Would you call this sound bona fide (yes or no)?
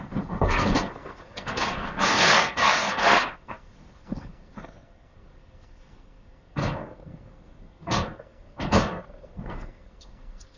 no